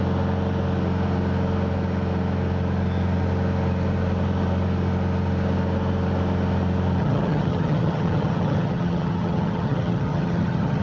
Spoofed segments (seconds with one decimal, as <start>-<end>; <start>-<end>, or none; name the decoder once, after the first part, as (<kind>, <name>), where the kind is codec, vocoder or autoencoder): 7.0-10.8 (vocoder, HiFi-GAN)